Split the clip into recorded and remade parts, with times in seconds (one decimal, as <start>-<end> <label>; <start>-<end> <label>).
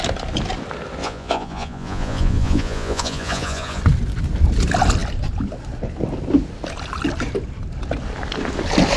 0.0-1.0 recorded; 1.0-3.8 remade; 3.8-9.0 recorded